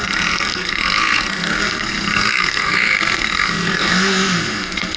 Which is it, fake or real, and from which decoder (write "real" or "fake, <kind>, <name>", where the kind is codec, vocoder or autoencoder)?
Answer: fake, codec, SNAC